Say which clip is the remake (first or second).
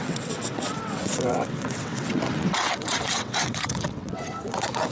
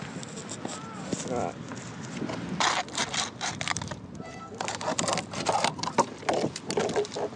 first